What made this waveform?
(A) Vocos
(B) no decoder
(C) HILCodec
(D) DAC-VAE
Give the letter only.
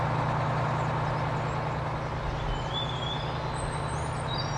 B